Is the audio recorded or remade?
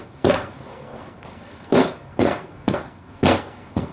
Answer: remade